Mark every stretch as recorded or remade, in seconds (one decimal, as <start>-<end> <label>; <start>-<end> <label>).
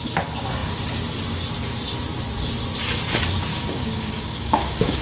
0.0-3.5 recorded; 3.5-5.0 remade